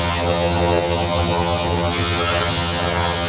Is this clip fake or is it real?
fake